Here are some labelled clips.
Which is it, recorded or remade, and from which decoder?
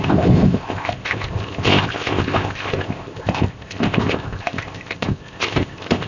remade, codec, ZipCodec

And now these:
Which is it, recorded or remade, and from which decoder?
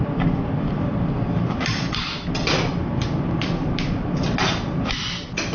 recorded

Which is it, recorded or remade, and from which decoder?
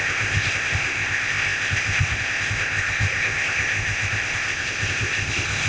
remade, codec, ZipCodec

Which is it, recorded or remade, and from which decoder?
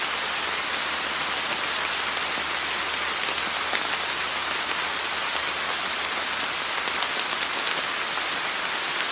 recorded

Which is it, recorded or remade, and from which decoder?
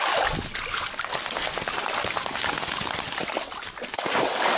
recorded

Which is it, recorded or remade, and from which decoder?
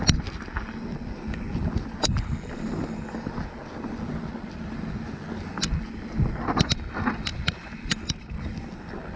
recorded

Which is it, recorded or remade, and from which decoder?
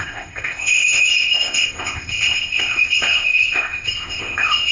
remade, codec, ZipCodec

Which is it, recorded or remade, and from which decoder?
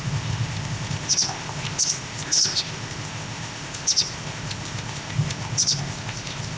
remade, codec, ZipCodec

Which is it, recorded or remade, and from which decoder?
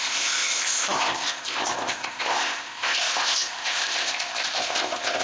remade, codec, ZipCodec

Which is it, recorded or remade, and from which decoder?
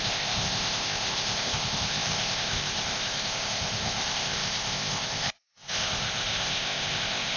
remade, codec, ZipCodec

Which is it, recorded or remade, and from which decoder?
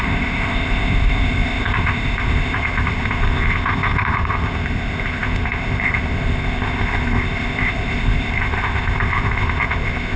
remade, codec, ZipCodec